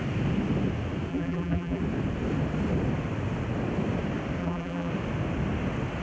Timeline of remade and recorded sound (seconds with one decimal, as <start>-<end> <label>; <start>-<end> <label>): 0.0-1.1 recorded; 1.1-1.8 remade; 1.8-4.4 recorded; 4.4-4.9 remade; 4.9-6.0 recorded